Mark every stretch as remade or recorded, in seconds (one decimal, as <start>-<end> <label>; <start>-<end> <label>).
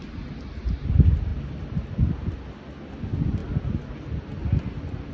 0.0-5.1 recorded